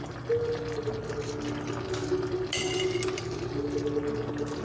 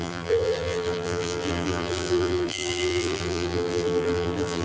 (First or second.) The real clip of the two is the first